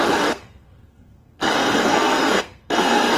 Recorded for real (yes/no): no